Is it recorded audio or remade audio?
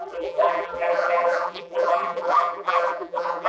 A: remade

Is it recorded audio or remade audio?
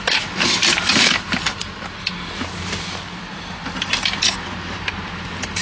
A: remade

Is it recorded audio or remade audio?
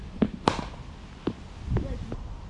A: recorded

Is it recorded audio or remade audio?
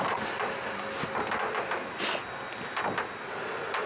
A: recorded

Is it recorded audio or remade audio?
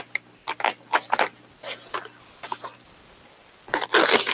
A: recorded